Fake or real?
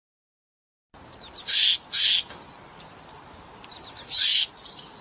real